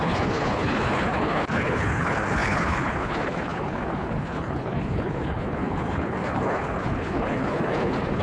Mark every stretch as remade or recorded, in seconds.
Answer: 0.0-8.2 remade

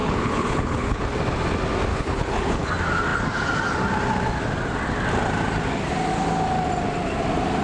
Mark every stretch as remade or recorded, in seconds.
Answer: 0.0-1.0 remade; 1.0-1.9 recorded; 1.9-2.7 remade; 2.7-7.6 recorded

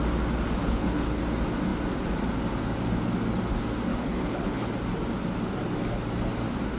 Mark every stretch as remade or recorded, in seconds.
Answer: 0.0-0.6 recorded; 0.6-1.2 remade; 1.2-3.9 recorded; 3.9-4.7 remade; 4.7-6.8 recorded

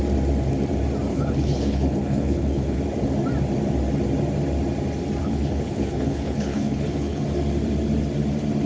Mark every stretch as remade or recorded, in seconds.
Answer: 0.0-1.1 recorded; 1.1-2.8 remade; 2.8-5.2 recorded; 5.2-7.2 remade; 7.2-8.7 recorded